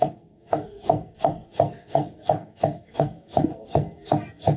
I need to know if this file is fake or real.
fake